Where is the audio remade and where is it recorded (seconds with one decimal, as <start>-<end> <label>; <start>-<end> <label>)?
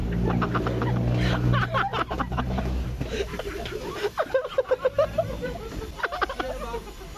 0.0-1.9 recorded; 1.9-6.0 remade; 6.0-7.2 recorded